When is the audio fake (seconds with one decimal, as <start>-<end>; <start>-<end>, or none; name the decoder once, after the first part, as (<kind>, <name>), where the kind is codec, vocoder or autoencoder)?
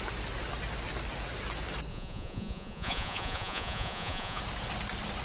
1.9-4.4 (vocoder, Vocos)